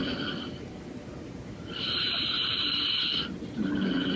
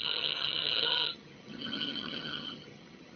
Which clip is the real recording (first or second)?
first